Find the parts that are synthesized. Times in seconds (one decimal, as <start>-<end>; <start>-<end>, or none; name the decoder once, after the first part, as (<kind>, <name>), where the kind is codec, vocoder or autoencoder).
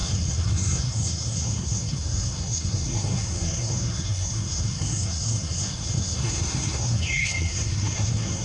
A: 0.0-8.4 (codec, SNAC)